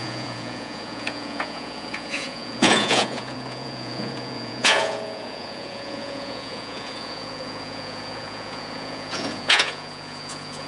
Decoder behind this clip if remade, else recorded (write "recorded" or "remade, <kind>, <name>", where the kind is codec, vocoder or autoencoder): remade, vocoder, Vocos